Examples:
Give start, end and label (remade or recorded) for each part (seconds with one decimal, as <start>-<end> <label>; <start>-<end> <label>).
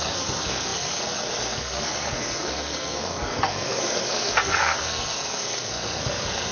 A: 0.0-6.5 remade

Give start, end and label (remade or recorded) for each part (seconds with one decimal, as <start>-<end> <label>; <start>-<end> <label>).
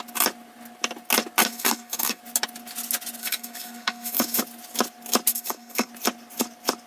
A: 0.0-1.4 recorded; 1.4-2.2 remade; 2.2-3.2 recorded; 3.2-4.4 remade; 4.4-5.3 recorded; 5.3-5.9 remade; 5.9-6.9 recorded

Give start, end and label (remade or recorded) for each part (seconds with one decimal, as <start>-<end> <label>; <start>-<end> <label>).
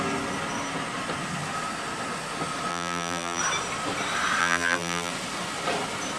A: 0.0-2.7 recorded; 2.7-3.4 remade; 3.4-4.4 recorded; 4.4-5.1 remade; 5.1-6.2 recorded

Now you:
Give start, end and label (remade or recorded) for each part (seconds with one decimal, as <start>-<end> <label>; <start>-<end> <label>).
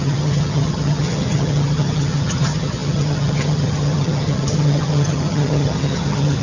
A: 0.0-6.4 remade